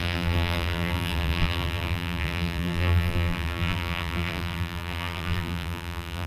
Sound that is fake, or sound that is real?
fake